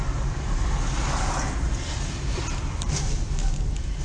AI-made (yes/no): no